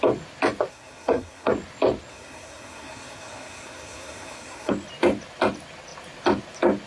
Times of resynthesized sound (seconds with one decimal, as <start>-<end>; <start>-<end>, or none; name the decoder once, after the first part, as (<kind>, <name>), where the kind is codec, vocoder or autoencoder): 0.7-1.5 (codec, SNAC); 2.1-4.7